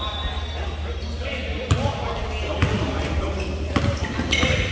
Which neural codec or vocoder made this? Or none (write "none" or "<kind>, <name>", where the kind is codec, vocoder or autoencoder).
none